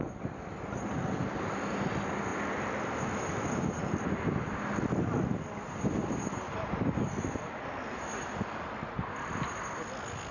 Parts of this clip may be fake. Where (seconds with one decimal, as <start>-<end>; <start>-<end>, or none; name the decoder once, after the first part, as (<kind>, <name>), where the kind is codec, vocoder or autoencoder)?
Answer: none